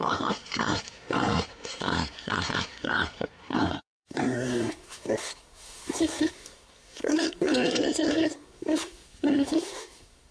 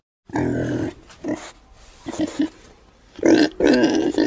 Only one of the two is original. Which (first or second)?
second